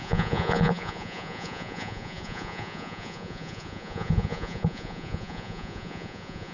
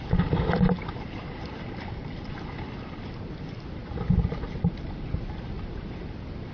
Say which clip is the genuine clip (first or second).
second